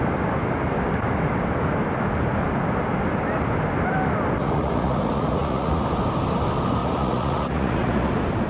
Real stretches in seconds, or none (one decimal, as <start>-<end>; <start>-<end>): 0.0-4.4; 5.8-6.8; 8.1-8.5